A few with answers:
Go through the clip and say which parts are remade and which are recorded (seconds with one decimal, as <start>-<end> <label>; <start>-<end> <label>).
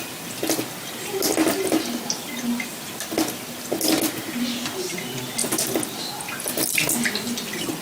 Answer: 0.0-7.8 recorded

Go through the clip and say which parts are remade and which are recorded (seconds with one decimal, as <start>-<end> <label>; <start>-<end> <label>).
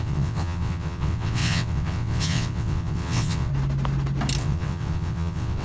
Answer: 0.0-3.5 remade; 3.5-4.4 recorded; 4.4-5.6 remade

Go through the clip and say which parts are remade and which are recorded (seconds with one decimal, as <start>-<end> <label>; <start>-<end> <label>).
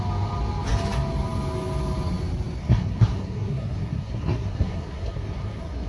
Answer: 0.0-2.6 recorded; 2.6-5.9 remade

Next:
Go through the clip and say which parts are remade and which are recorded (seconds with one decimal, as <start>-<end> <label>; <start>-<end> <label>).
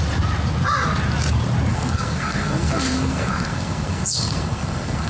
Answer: 0.0-1.7 recorded; 1.7-5.1 remade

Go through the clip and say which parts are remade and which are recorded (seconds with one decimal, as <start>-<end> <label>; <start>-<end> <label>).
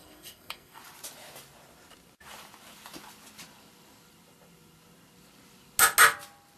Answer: 0.0-0.8 remade; 0.8-6.6 recorded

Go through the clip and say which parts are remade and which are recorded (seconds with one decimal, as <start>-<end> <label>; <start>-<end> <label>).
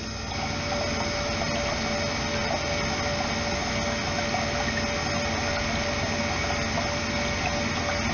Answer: 0.0-8.1 recorded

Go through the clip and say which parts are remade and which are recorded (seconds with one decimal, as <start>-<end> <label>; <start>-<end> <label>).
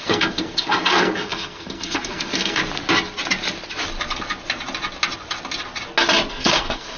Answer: 0.0-2.6 remade; 2.6-6.3 recorded; 6.3-7.0 remade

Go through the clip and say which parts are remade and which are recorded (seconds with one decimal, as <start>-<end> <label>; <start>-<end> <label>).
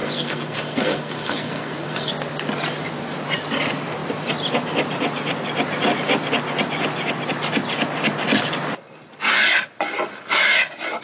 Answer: 0.0-2.1 remade; 2.1-11.0 recorded